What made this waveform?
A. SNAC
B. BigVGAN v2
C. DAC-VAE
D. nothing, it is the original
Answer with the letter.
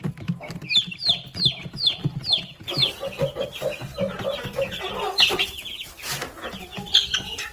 D